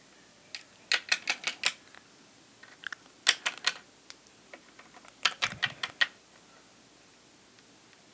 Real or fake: real